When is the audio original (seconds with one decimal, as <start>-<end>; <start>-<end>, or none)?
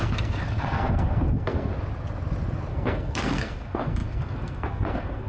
1.7-2.7